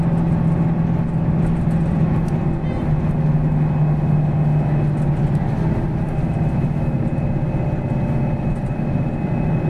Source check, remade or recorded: recorded